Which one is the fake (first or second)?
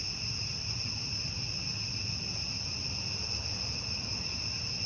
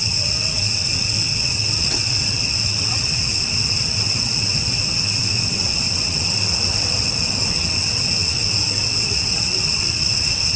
second